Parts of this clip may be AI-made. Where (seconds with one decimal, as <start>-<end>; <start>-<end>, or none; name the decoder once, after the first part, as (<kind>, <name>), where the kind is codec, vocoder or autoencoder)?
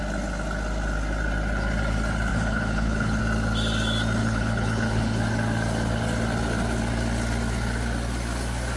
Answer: 2.3-3.2 (codec, HILCodec); 4.2-5.2